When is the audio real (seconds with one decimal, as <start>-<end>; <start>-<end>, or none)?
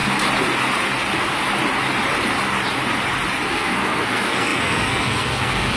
0.0-3.5